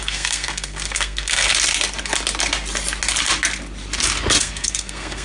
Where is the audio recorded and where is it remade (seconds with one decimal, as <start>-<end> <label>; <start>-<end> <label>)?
0.0-1.5 remade; 1.5-4.4 recorded; 4.4-5.2 remade